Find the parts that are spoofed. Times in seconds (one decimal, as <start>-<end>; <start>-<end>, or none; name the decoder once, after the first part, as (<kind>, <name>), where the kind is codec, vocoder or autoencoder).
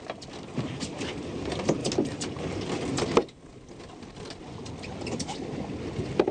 none